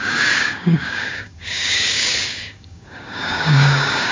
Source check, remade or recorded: remade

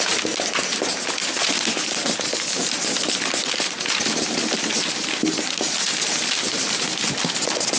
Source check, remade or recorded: recorded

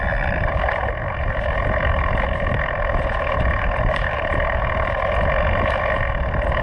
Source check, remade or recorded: recorded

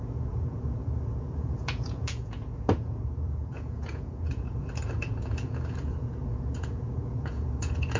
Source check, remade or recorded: remade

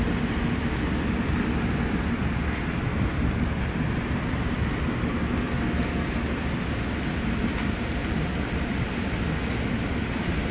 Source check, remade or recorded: recorded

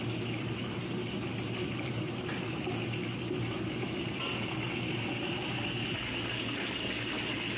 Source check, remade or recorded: recorded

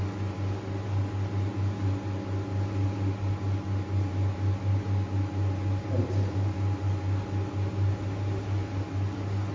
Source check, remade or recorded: recorded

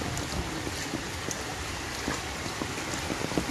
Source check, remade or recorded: recorded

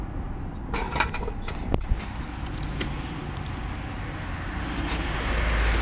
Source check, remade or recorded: recorded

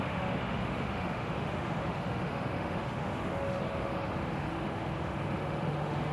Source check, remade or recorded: remade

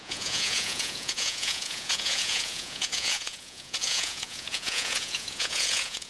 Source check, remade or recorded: remade